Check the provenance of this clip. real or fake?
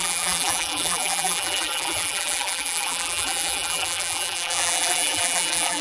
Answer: fake